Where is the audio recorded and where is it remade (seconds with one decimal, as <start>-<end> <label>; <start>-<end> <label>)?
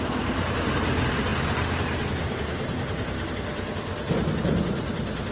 0.0-5.3 recorded